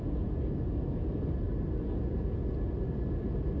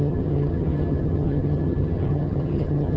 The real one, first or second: first